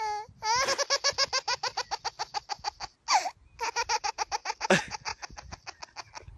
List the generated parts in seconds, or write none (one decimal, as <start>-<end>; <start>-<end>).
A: none